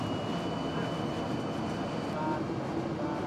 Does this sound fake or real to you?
real